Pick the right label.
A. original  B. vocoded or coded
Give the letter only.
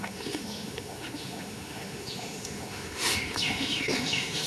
B